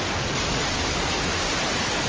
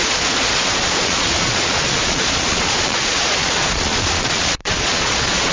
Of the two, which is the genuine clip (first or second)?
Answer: first